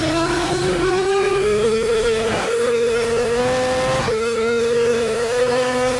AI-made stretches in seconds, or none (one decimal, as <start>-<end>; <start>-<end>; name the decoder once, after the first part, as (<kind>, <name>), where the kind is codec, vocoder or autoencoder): 0.0-3.4 (codec, SNAC); 4.0-6.0